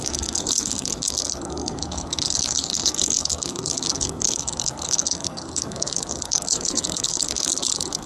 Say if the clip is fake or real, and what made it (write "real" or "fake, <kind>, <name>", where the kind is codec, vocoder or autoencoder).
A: fake, codec, SNAC